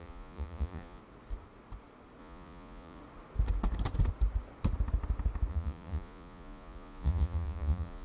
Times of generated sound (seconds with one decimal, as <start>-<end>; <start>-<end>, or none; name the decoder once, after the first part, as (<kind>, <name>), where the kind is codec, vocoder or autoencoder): 0.0-1.0 (vocoder, Vocos); 2.2-3.0; 5.5-8.0